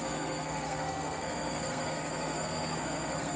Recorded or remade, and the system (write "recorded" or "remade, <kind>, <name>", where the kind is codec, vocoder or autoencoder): remade, codec, SNAC